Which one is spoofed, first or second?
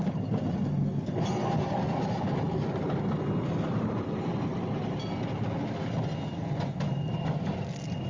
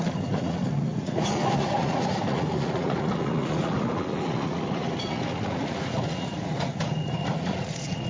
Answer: second